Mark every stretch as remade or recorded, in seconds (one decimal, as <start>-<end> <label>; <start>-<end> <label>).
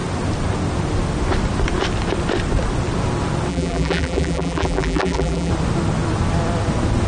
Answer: 0.0-3.5 recorded; 3.5-5.5 remade; 5.5-7.1 recorded